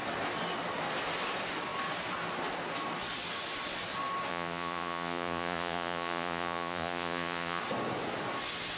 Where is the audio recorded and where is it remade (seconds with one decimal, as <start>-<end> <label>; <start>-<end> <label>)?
0.0-4.3 recorded; 4.3-7.6 remade; 7.6-8.8 recorded